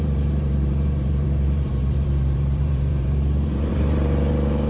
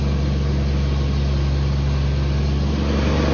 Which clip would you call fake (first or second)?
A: first